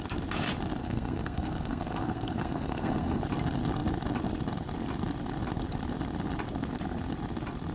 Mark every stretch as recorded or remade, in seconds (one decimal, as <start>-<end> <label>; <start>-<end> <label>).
0.0-0.8 recorded; 0.8-3.2 remade; 3.2-7.7 recorded